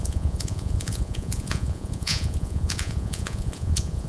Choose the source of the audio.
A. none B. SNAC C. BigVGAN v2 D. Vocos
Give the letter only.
D